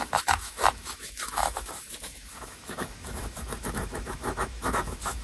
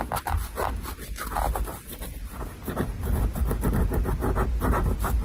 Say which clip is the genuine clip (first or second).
second